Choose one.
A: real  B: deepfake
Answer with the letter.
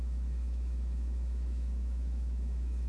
B